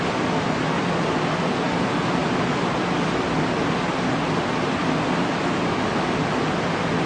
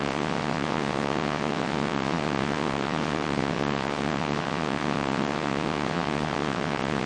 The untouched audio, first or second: first